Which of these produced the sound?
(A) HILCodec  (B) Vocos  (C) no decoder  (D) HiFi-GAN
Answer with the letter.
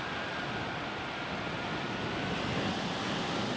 C